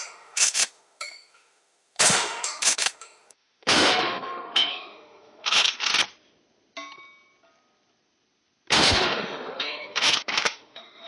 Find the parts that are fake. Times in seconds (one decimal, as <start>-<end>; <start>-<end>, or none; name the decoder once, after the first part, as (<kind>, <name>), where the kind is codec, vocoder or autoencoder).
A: 0.0-5.9 (autoencoder, DAC-VAE); 8.7-11.1